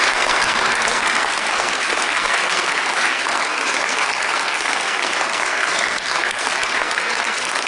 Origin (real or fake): fake